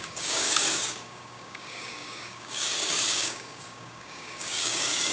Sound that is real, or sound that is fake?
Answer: fake